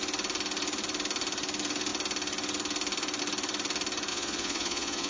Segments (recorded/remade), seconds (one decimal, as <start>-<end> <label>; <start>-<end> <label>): 0.0-4.1 recorded; 4.1-5.1 remade